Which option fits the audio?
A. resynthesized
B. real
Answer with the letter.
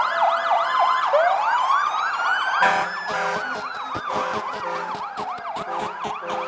B